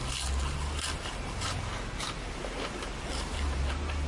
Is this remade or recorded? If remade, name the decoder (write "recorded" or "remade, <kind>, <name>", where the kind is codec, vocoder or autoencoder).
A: remade, vocoder, BigVGAN v2